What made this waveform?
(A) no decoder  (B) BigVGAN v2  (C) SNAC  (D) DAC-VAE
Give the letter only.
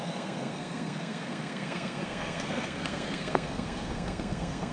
C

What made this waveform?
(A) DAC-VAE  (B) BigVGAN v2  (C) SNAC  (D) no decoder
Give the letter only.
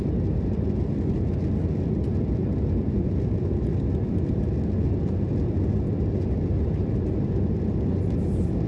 D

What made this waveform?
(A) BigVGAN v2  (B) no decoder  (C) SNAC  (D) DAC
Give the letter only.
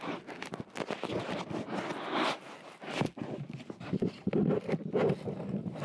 B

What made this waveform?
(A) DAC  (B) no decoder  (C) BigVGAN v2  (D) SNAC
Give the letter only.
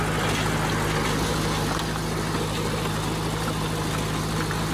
B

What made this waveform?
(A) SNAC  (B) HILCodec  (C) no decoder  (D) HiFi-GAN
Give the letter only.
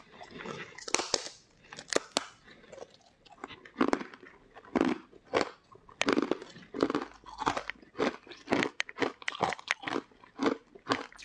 C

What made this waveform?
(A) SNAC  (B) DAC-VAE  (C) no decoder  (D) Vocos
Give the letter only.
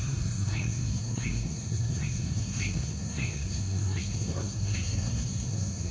A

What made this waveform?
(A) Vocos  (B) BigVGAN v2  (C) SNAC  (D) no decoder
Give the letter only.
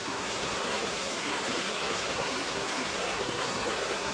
C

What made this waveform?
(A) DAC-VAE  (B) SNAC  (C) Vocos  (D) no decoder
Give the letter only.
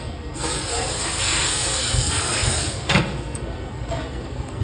B